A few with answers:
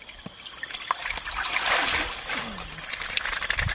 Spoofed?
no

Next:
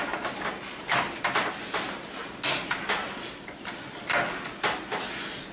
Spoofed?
no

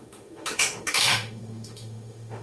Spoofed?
yes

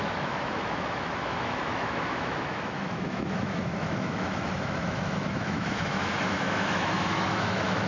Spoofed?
yes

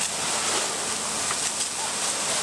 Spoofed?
no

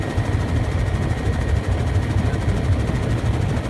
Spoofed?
no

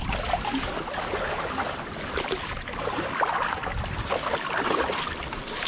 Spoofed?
no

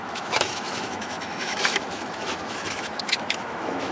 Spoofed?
yes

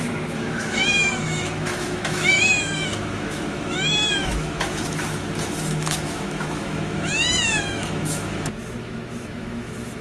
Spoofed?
yes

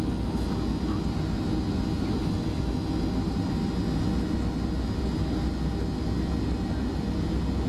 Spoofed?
no